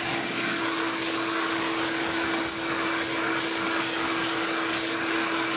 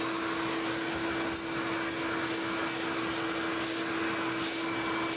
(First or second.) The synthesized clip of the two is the first